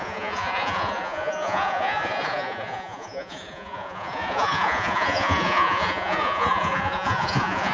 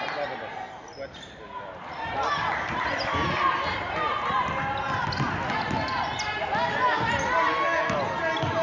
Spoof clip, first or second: first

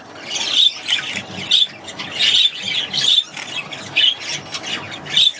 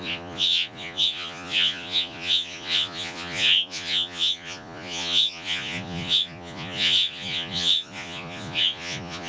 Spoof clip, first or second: second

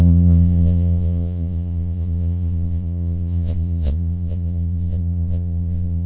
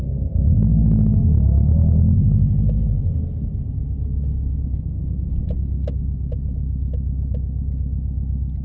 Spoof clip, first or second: first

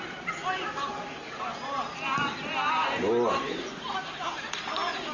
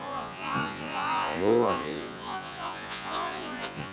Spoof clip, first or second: second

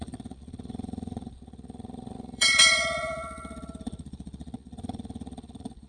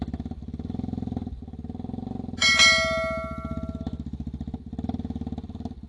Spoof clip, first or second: first